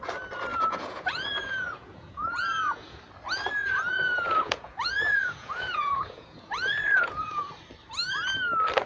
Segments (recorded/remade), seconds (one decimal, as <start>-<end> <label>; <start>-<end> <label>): 0.0-0.5 recorded; 0.5-3.0 remade; 3.0-3.6 recorded; 3.6-7.5 remade; 7.5-8.9 recorded